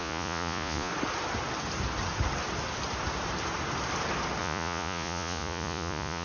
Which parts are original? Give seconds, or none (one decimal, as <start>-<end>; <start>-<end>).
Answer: 0.9-4.4